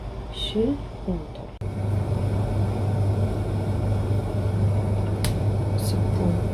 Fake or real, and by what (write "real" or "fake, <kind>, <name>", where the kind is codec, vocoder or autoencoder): real